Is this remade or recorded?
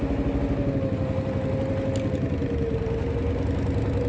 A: recorded